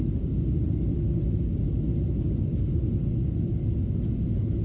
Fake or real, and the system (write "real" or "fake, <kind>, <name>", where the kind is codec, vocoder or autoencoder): real